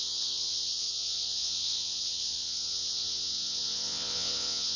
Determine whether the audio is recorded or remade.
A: remade